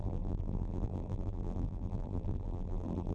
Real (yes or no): no